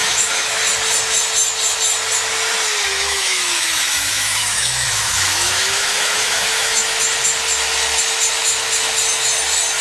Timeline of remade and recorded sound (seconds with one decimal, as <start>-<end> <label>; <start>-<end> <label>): 0.0-0.6 remade; 0.6-2.9 recorded; 2.9-7.0 remade; 7.0-9.8 recorded